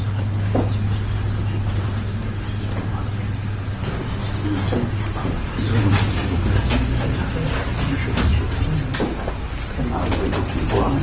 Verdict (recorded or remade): recorded